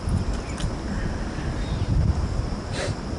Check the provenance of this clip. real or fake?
real